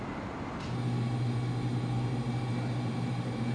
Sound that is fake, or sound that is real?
real